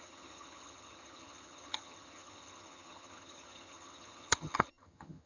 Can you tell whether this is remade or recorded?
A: remade